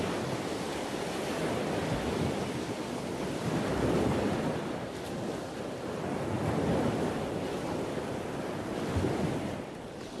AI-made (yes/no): no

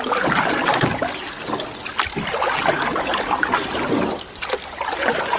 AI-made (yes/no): no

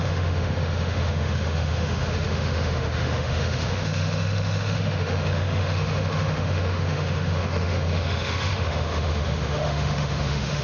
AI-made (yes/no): yes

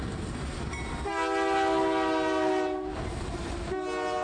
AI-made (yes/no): no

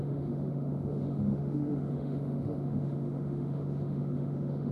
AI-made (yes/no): yes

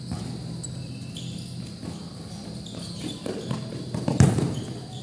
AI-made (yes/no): no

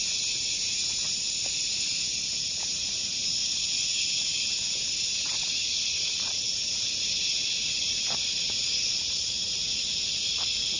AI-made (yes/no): yes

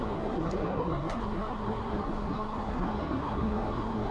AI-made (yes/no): yes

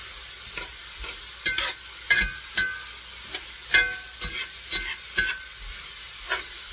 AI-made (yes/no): no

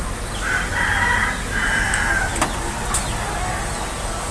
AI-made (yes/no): no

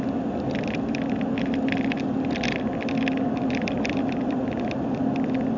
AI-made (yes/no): no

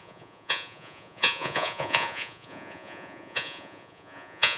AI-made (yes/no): yes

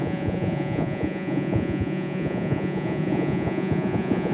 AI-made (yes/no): yes